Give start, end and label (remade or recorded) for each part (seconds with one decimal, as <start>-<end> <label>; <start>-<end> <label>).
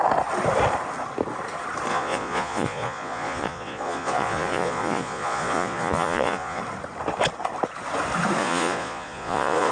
0.0-1.9 recorded; 1.9-6.6 remade; 6.6-8.4 recorded; 8.4-9.7 remade